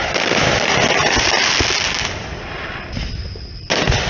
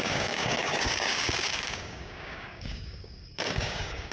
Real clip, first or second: first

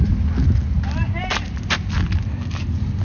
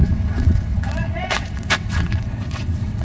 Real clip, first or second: first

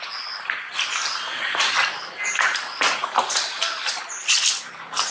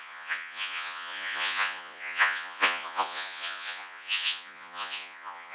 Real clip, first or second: first